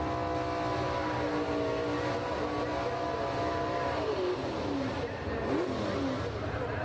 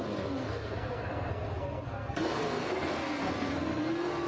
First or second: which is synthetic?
second